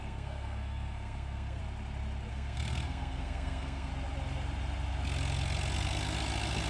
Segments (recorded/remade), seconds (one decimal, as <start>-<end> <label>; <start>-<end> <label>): 0.0-1.6 remade; 1.6-2.3 recorded; 2.3-3.9 remade; 3.9-6.7 recorded